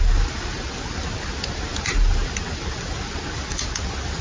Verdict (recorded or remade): recorded